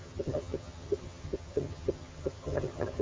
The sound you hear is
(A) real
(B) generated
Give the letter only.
B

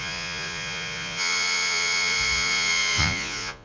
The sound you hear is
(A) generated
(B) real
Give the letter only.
A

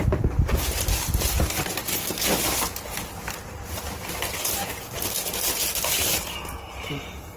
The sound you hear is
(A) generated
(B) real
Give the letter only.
B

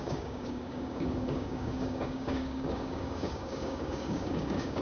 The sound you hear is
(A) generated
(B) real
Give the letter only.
A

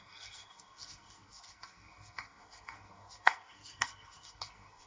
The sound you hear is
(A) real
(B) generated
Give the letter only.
B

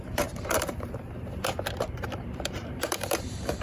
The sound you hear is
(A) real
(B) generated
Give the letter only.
B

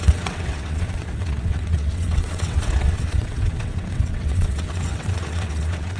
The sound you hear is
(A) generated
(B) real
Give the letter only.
A